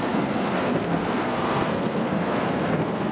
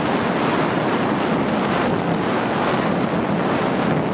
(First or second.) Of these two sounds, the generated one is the first